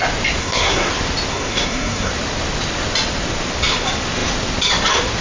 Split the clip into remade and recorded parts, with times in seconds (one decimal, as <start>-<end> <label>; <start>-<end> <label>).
0.0-0.4 recorded; 0.4-0.9 remade; 0.9-1.3 recorded; 1.3-2.1 remade; 2.1-5.2 recorded